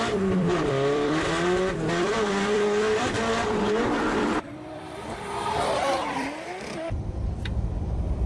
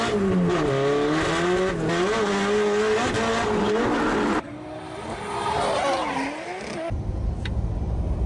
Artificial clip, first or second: first